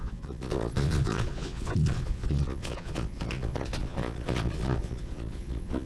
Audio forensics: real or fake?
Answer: fake